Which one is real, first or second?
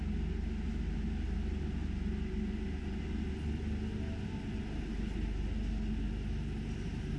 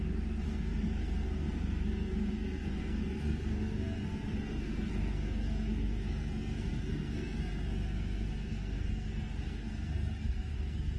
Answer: first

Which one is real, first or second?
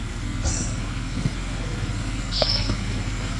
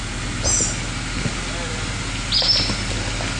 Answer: second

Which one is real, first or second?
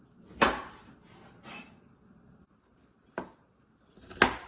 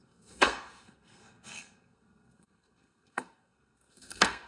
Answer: first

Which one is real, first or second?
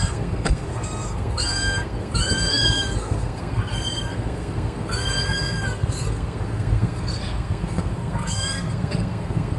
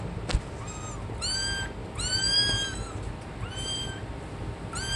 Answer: second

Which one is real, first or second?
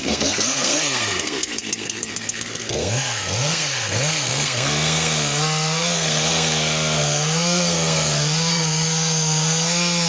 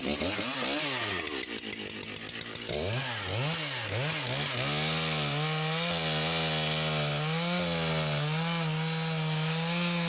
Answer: second